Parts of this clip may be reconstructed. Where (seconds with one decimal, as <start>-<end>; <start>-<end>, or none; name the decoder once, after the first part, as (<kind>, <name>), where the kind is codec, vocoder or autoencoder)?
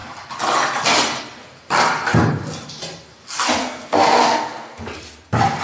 3.6-4.8 (codec, SNAC)